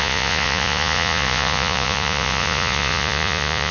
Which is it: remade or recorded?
remade